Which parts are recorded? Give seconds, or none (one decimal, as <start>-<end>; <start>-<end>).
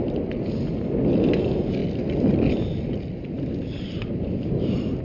0.0-5.0